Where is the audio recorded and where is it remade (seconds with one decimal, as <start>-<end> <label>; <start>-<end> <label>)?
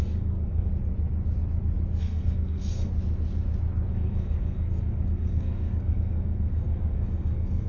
0.0-0.7 remade; 0.7-2.0 recorded; 2.0-2.9 remade; 2.9-3.9 recorded; 3.9-7.7 remade